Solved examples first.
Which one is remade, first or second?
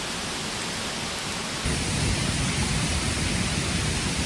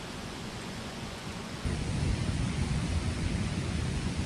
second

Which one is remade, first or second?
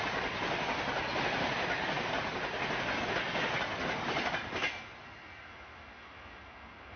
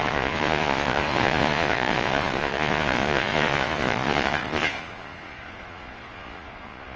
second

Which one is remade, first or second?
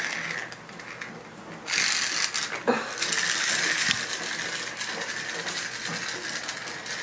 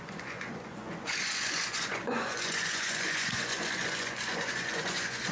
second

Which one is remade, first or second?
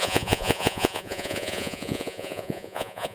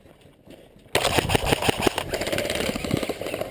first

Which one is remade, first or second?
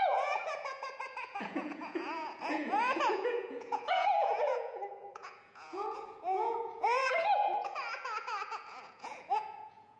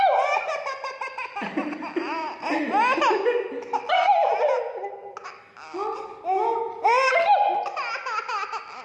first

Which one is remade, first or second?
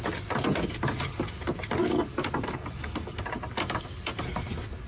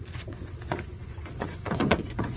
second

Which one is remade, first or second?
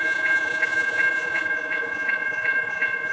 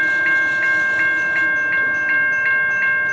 first